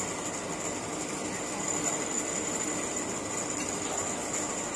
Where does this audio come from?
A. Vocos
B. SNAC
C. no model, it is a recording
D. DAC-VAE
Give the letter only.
C